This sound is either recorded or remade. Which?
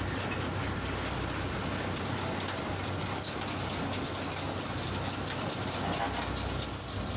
recorded